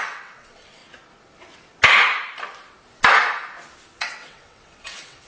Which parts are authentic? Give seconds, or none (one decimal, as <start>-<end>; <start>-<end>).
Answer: 0.8-4.0